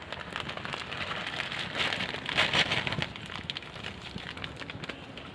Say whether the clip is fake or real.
real